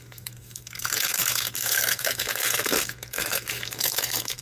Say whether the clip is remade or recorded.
remade